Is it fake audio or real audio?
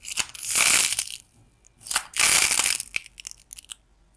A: real